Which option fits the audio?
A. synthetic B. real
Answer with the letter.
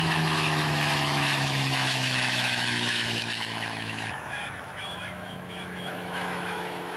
A